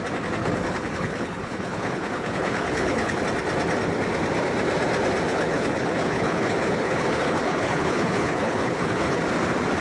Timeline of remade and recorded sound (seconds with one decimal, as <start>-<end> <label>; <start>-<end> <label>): 0.0-0.4 recorded; 0.4-3.2 remade; 3.2-5.3 recorded; 5.3-9.2 remade; 9.2-9.8 recorded